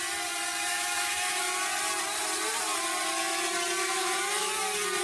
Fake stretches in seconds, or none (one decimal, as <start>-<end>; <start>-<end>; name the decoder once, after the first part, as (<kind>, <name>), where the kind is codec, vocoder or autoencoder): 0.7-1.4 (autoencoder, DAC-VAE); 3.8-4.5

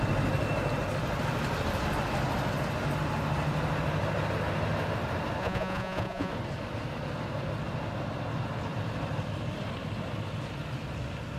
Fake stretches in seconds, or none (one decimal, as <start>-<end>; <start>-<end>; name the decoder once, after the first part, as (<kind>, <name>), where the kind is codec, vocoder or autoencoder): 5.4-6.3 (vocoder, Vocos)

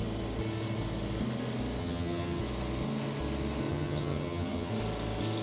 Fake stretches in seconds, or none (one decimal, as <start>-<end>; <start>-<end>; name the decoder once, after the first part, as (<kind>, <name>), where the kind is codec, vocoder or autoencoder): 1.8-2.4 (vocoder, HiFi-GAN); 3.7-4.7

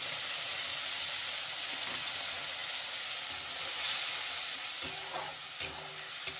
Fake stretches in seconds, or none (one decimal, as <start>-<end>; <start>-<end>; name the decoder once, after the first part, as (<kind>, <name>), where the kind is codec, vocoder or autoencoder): none

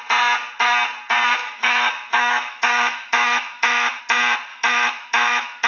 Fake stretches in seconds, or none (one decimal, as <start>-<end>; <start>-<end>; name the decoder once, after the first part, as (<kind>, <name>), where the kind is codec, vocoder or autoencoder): 1.4-4.0 (autoencoder, DAC-VAE); 4.5-5.7